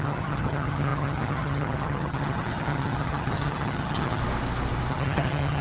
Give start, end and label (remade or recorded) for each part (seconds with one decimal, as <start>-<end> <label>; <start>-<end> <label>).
0.0-4.2 remade; 4.2-4.9 recorded; 4.9-5.6 remade